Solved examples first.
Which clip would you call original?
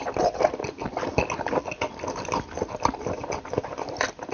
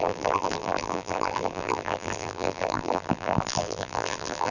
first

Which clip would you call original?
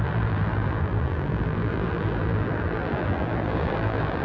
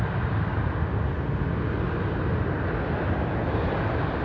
second